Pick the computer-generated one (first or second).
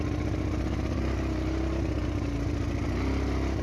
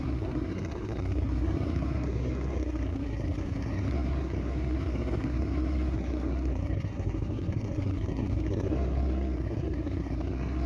second